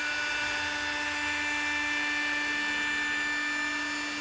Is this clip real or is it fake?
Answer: real